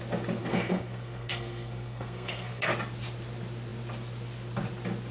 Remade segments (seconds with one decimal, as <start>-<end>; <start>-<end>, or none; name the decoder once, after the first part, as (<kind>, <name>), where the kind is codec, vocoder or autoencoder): 0.4-2.7 (codec, SNAC)